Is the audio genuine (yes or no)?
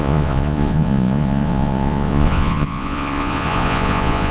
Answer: no